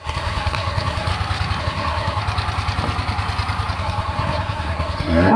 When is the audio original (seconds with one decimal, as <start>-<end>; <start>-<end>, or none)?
1.1-1.6; 2.2-3.8